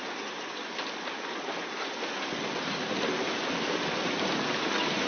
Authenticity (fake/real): real